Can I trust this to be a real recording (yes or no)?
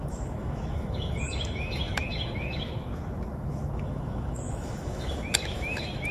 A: no